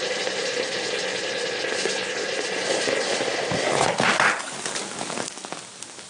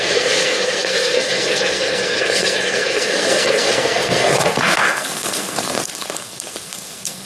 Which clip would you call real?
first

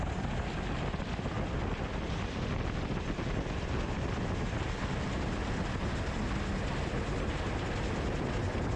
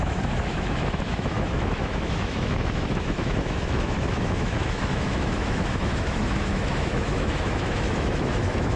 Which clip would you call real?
first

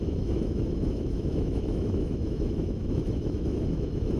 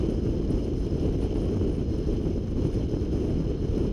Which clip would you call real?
second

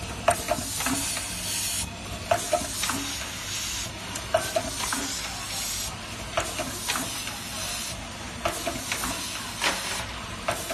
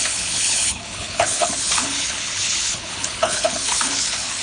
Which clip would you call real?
first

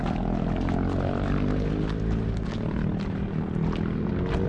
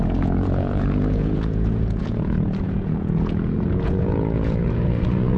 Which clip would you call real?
first